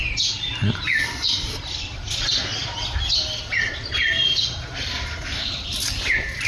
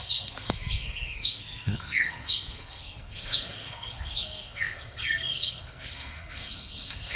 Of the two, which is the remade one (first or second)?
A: second